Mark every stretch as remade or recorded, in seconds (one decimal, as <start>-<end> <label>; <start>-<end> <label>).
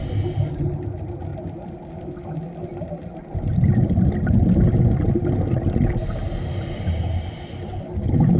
0.0-8.4 recorded